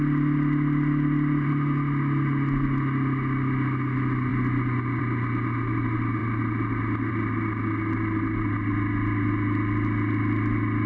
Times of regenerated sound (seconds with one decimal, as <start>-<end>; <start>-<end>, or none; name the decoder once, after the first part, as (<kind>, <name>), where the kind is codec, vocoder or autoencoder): none